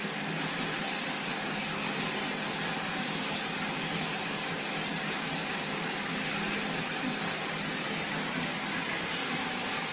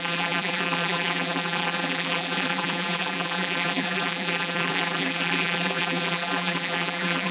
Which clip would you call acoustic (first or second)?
first